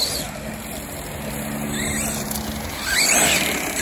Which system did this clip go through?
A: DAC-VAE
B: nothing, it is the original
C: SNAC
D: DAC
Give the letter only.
B